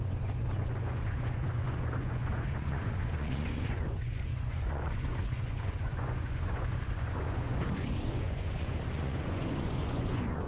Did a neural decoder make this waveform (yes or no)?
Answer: yes